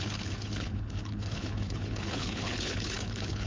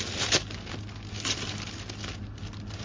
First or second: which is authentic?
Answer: second